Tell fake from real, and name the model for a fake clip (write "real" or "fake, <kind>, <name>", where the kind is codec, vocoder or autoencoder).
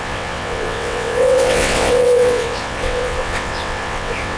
fake, vocoder, WaveNeXt